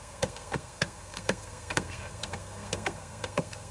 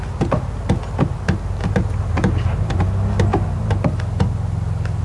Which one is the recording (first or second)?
second